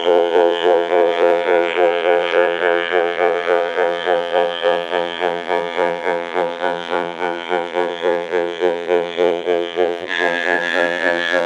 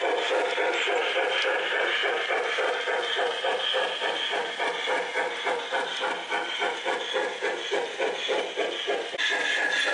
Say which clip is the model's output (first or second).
first